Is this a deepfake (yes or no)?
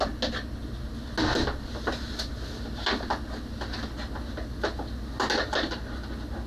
no